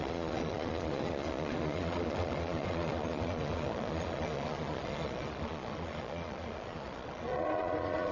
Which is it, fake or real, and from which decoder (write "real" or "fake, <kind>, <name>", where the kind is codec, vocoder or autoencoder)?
fake, vocoder, Vocos